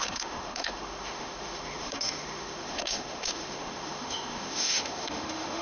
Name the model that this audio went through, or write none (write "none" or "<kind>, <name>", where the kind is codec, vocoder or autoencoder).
autoencoder, DAC-VAE